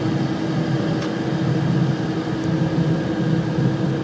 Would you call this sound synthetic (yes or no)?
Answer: no